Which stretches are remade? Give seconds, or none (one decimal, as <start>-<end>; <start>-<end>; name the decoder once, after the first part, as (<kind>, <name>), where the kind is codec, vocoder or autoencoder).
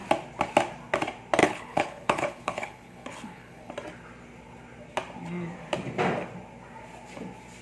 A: 1.4-3.7 (codec, HILCodec)